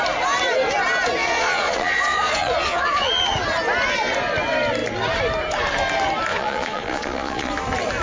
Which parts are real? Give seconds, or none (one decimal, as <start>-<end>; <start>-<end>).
0.0-1.2; 3.1-6.3; 7.5-8.0